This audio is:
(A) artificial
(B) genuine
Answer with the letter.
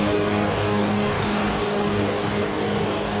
A